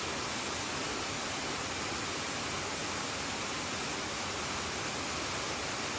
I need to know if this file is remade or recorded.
recorded